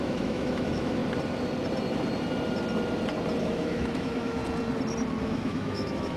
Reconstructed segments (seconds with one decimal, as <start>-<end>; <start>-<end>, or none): 0.0-1.0; 3.4-4.4; 5.2-6.2